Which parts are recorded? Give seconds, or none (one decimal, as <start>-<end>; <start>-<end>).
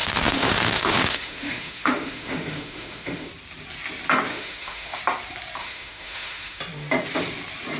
3.3-4.3; 5.0-5.6; 6.6-7.8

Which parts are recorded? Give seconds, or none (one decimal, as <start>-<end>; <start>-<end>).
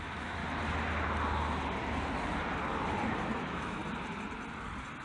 0.4-3.4; 3.8-5.0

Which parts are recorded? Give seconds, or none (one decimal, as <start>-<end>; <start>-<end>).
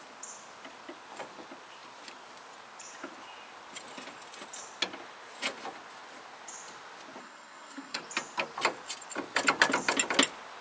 0.0-7.2; 8.0-10.6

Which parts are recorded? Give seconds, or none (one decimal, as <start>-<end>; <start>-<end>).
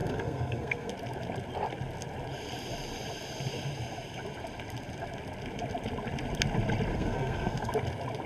0.9-6.9; 7.7-8.3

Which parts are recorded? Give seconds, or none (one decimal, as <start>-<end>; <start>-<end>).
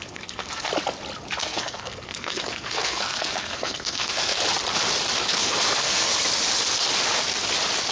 0.7-1.4; 4.4-5.3; 6.1-7.9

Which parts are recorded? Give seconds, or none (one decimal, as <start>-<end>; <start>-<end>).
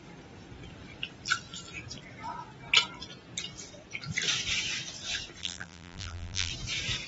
0.0-5.4; 6.5-7.1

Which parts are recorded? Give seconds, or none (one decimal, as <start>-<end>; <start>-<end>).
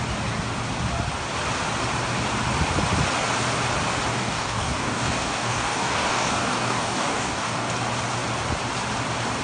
0.0-4.1; 7.7-9.4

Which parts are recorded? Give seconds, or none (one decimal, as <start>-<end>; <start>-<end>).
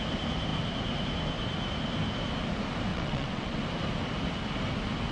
0.0-2.9; 3.6-5.1